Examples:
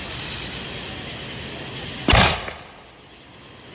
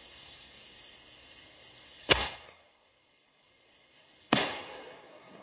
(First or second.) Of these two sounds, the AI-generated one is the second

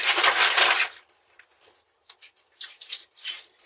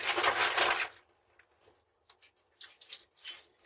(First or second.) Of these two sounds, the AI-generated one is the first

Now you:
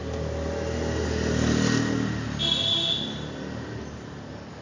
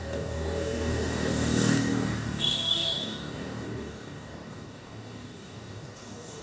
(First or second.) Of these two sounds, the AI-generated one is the second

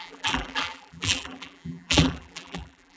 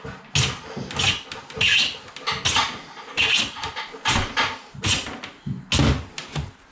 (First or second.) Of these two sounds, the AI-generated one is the first